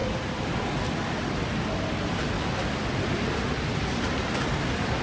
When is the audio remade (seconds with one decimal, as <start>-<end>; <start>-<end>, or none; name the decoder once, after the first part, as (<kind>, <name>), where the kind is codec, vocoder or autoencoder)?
none